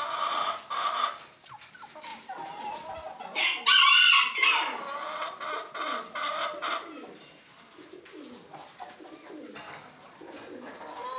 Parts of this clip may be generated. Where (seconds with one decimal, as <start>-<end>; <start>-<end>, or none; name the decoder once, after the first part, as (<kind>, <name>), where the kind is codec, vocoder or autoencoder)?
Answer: 2.1-4.1 (vocoder, BigVGAN v2)